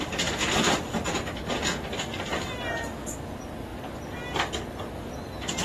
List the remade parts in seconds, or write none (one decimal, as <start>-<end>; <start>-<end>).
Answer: none